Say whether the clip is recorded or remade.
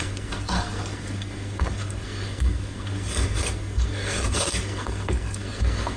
remade